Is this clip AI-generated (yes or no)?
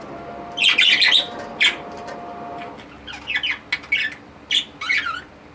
no